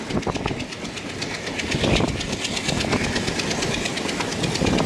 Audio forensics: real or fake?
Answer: real